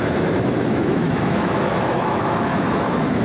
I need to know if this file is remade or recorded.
remade